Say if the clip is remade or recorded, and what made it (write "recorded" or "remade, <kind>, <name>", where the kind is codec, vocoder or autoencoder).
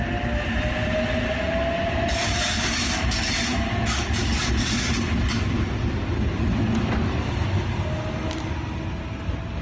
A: recorded